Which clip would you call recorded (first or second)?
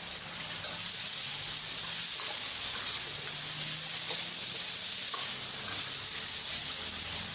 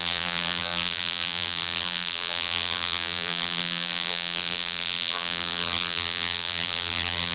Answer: first